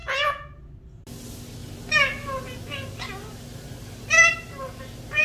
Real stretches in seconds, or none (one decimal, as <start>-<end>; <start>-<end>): 0.7-5.2